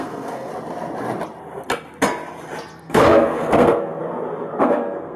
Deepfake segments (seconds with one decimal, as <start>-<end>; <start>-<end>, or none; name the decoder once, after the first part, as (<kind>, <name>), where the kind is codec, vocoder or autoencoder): 0.0-0.5 (codec, SNAC); 2.8-4.0; 4.6-5.2